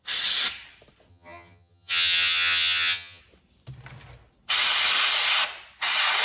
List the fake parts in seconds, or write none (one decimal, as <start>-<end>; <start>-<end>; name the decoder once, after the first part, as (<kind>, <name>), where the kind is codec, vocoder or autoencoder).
1.1-3.2 (vocoder, HiFi-GAN)